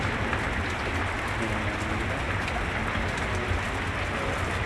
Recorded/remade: recorded